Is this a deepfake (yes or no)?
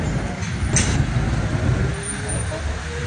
no